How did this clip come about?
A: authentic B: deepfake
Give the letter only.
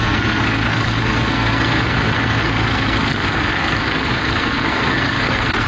B